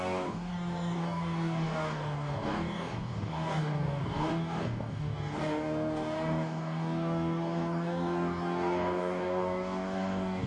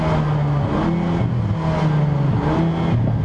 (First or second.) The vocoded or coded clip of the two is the first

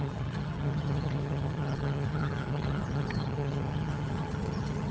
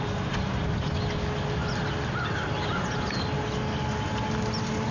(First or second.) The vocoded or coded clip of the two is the first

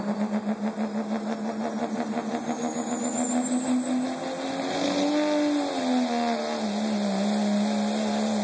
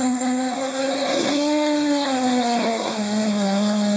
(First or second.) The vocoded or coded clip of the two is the second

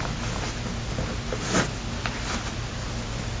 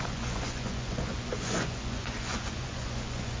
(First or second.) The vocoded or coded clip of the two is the second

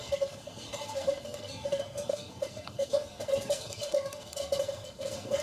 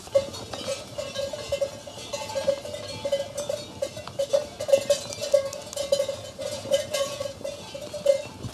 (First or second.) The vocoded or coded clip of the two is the first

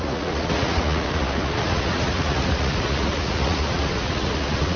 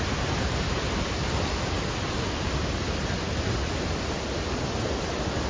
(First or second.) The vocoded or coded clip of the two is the first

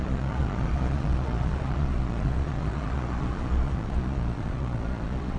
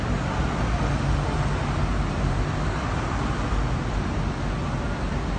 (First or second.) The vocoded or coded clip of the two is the first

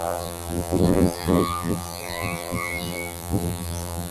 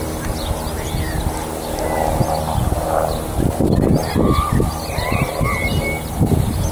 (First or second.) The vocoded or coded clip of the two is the first